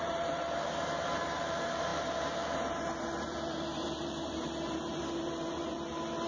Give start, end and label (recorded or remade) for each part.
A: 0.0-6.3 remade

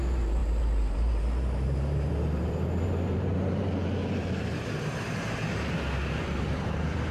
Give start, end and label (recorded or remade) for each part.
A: 0.0-7.1 remade